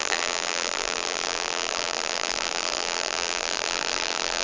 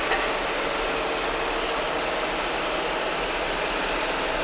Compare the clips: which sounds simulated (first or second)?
first